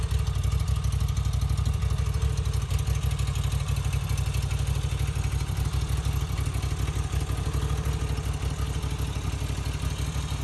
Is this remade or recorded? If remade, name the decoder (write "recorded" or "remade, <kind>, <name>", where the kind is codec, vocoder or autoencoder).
recorded